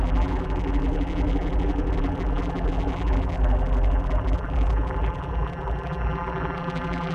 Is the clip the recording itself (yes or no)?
no